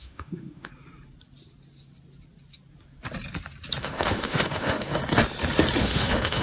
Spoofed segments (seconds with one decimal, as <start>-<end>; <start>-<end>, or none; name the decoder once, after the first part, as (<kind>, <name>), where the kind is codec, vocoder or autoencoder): 0.0-0.7 (autoencoder, DAC-VAE); 3.8-5.0; 5.8-6.4